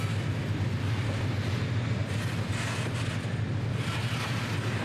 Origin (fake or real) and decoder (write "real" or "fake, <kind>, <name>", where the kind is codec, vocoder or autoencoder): real